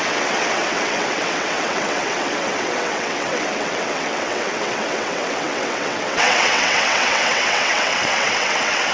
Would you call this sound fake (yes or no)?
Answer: yes